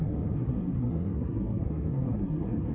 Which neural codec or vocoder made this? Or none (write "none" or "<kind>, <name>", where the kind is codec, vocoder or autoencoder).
codec, SNAC